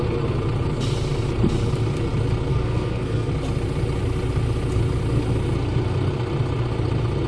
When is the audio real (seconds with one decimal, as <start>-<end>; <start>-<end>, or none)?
0.0-2.5; 3.3-7.3